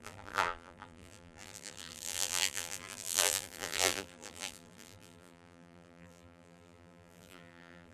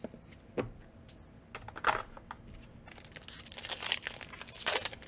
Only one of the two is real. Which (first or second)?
second